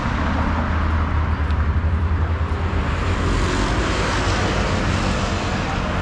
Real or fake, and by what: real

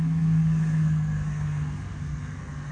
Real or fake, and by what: fake, codec, SNAC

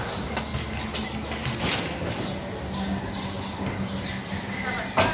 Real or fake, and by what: real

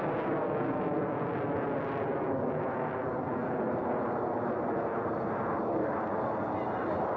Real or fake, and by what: real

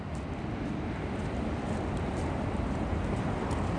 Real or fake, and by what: real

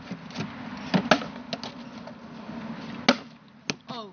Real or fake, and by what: real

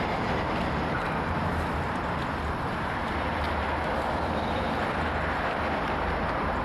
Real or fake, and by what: fake, vocoder, BigVGAN v2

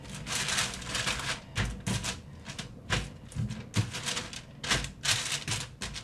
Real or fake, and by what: real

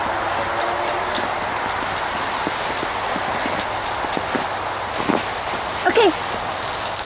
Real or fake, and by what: real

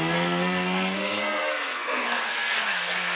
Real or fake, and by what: fake, codec, SNAC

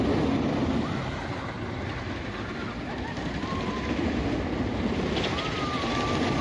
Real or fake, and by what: real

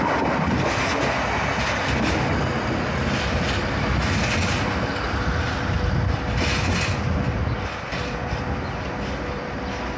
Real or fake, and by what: real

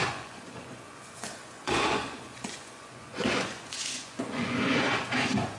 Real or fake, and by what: fake, vocoder, Vocos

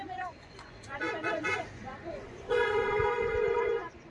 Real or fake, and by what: fake, vocoder, Vocos